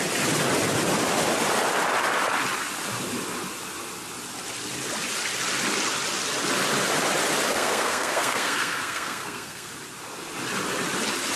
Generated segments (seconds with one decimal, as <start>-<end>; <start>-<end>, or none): 7.5-9.7